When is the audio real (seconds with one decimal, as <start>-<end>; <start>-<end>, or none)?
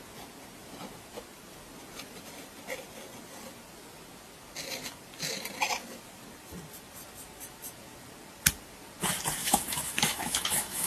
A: 0.0-9.4